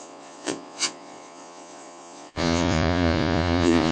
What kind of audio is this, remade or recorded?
remade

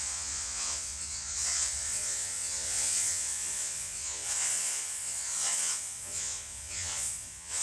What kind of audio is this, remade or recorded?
remade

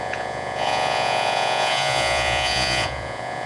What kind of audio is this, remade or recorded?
remade